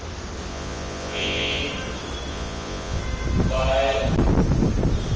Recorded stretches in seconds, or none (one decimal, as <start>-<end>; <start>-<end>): 0.0-0.5; 1.6-2.3; 3.0-5.2